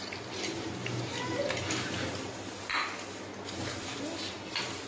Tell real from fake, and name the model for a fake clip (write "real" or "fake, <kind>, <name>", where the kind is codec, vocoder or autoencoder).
real